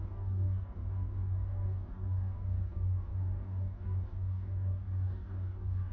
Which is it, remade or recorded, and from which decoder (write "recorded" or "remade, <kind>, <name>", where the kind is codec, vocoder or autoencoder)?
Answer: remade, codec, DAC